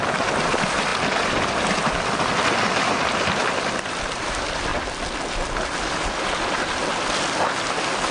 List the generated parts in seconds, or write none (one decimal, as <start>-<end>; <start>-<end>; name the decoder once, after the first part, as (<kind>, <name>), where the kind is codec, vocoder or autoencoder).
0.0-4.7 (vocoder, BigVGAN v2); 6.2-6.8